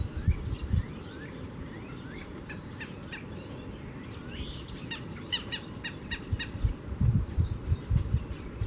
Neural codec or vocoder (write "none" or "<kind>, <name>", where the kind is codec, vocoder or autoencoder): vocoder, BigVGAN v2